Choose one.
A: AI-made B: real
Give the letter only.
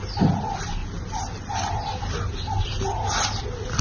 B